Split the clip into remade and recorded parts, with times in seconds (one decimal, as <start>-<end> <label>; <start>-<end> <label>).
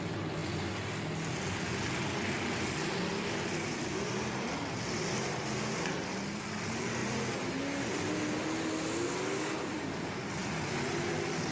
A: 0.0-11.5 recorded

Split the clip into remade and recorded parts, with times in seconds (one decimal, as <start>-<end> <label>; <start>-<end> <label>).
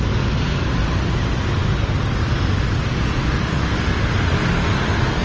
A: 0.0-5.2 recorded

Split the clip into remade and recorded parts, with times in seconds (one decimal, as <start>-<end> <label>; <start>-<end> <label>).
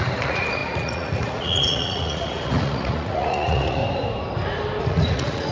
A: 0.0-3.8 remade; 3.8-4.8 recorded; 4.8-5.5 remade